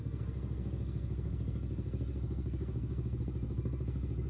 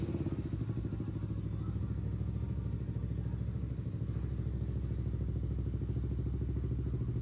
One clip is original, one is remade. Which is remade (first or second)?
first